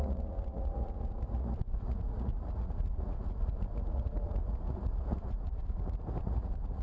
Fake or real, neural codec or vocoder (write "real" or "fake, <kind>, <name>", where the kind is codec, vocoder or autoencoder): fake, vocoder, Vocos